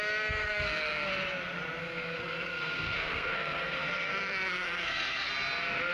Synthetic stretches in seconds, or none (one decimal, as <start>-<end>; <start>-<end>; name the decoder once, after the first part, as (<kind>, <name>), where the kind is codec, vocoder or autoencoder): 0.4-1.1 (codec, SNAC); 1.8-5.3